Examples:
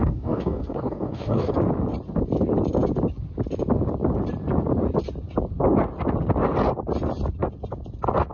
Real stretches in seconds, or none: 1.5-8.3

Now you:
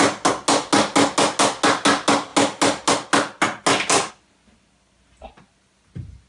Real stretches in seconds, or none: 0.0-6.3